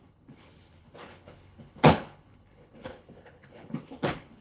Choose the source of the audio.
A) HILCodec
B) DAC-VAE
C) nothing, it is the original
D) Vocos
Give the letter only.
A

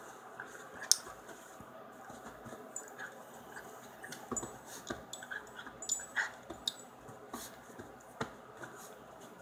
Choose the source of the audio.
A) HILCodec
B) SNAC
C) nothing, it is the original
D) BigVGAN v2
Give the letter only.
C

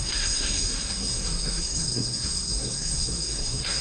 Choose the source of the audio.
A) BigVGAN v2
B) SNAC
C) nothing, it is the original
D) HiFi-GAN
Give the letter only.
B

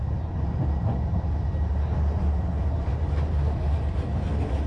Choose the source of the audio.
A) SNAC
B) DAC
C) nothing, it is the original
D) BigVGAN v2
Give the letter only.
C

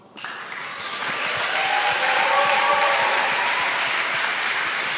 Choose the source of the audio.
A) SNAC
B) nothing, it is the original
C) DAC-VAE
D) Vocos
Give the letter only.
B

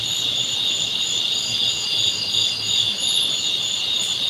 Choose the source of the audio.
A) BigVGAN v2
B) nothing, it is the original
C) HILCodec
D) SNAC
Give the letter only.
B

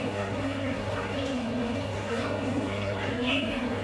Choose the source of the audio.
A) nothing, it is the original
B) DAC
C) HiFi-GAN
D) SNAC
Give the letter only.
D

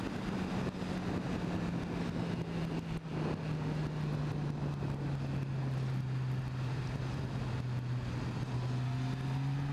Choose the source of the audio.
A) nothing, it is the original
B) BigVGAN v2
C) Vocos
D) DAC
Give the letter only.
A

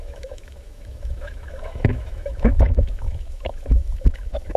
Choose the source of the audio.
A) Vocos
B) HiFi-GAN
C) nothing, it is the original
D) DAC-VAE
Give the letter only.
D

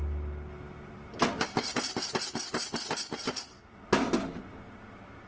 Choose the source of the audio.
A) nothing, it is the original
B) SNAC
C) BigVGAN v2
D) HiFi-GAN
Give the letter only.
A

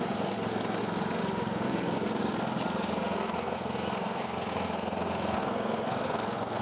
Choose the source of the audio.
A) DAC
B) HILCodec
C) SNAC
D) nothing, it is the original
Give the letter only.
C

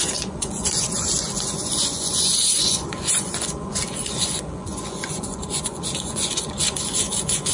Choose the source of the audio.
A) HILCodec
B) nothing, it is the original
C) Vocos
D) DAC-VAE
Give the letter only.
C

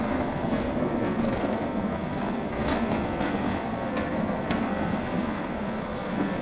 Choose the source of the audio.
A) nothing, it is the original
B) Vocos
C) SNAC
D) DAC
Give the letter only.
C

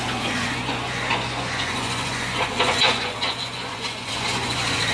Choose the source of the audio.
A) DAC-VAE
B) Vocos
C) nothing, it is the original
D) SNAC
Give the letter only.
B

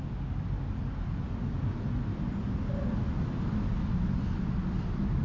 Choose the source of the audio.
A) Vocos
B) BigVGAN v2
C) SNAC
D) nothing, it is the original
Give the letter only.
D